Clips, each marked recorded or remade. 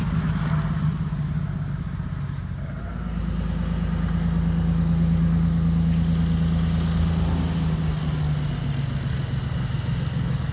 recorded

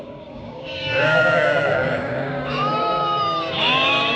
remade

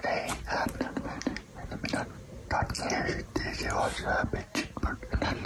remade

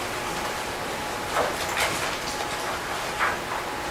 remade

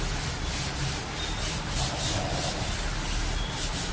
recorded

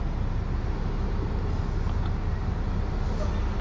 recorded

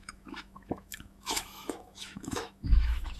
remade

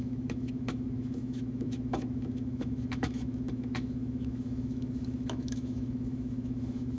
remade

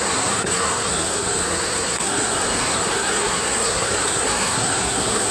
remade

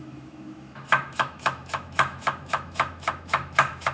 remade